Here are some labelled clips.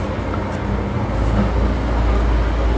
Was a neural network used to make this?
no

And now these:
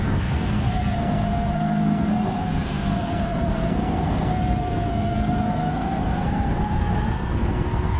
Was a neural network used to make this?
yes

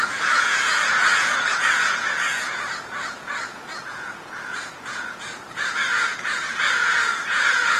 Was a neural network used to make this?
yes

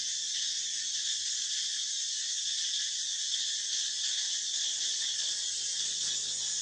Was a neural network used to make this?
no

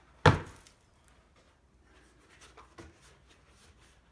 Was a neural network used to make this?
no